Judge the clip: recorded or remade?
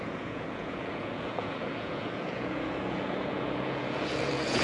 remade